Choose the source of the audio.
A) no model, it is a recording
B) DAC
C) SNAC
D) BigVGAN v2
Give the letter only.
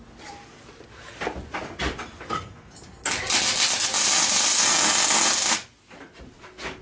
A